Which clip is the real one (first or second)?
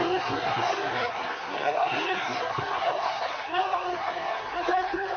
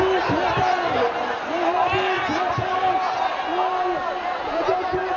second